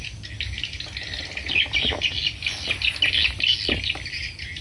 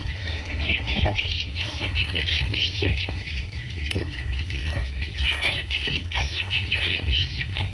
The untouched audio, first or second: first